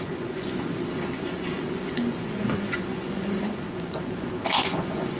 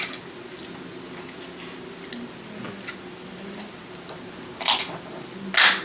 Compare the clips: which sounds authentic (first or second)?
second